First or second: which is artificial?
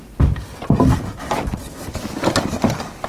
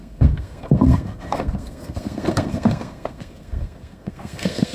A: second